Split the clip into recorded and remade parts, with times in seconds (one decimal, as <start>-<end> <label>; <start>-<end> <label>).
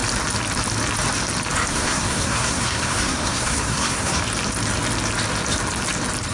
0.0-1.7 recorded; 1.7-4.2 remade; 4.2-6.3 recorded